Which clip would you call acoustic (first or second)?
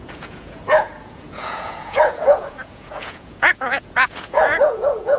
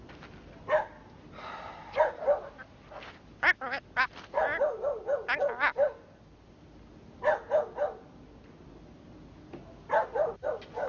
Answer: second